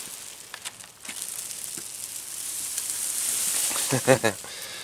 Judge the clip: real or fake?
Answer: real